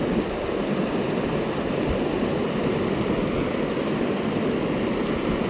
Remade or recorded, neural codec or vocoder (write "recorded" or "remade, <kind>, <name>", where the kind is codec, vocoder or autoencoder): recorded